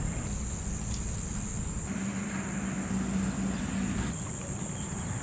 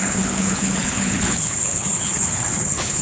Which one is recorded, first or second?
first